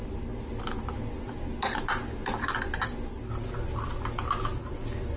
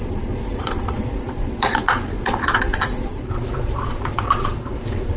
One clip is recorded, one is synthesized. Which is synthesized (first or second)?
second